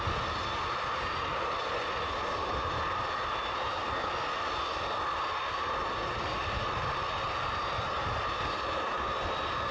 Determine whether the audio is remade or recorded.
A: recorded